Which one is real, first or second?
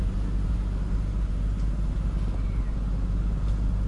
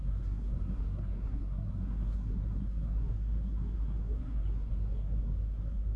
first